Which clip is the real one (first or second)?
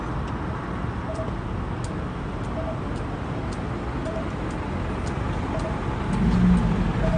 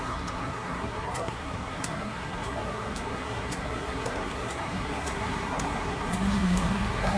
first